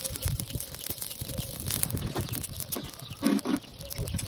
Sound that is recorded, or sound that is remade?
recorded